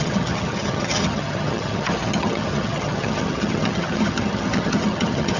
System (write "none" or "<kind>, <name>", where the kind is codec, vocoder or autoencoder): vocoder, HiFi-GAN